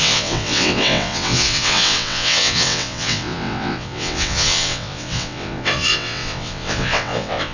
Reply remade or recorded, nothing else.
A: remade